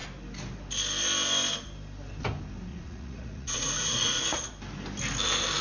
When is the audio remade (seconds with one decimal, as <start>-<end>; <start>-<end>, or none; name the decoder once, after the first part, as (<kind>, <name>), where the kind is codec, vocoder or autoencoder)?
2.7-4.5 (vocoder, Vocos)